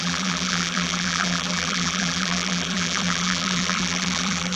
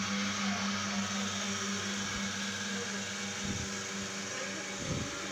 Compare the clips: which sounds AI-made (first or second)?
first